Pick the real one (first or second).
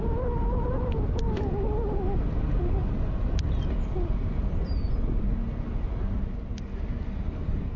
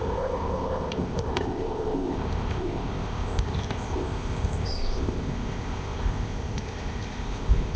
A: first